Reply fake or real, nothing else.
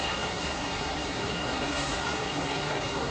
fake